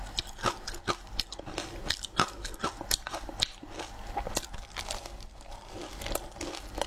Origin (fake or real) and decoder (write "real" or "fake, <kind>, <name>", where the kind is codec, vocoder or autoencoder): real